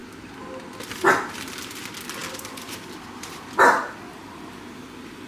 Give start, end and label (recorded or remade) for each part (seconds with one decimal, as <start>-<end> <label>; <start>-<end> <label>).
0.0-2.2 recorded; 2.2-3.5 remade; 3.5-5.3 recorded